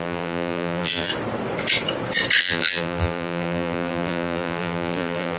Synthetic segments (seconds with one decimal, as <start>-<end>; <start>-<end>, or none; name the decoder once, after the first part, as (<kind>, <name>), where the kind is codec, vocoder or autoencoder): 0.0-1.1 (vocoder, BigVGAN v2); 2.4-5.4